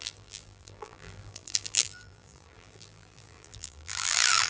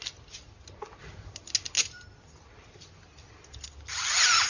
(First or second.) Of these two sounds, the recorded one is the second